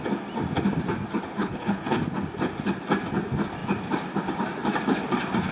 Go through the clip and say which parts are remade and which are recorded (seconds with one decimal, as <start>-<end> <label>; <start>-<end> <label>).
0.0-1.4 recorded; 1.4-2.0 remade; 2.0-5.5 recorded